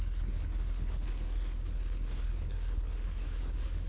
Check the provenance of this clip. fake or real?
fake